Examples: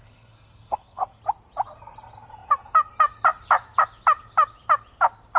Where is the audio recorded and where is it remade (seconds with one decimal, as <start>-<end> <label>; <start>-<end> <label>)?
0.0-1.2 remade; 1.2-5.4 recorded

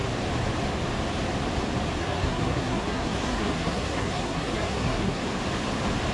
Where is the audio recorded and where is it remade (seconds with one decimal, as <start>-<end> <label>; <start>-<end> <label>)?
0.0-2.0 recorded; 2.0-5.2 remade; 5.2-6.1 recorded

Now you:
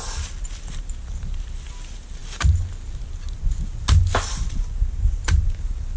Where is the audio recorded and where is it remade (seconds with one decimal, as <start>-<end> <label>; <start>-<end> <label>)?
0.0-6.0 recorded

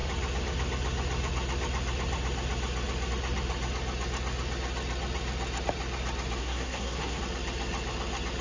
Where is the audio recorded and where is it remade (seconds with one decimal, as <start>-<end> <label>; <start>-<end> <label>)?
0.0-6.4 recorded; 6.4-7.2 remade; 7.2-8.4 recorded

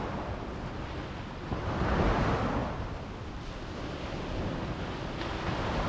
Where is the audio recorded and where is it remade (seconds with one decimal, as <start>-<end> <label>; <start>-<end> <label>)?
0.0-5.9 recorded

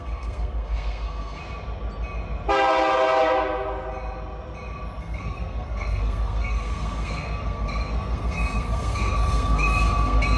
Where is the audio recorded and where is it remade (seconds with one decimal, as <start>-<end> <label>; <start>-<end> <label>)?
0.0-1.4 remade; 1.4-5.0 recorded; 5.0-10.4 remade

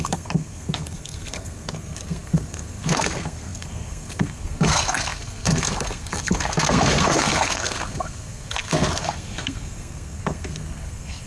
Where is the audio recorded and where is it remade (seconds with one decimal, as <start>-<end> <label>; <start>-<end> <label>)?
0.0-11.3 remade